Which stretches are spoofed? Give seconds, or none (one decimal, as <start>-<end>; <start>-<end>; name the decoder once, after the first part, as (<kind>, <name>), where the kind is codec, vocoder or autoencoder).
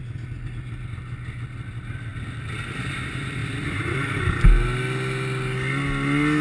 3.4-4.2 (vocoder, BigVGAN v2)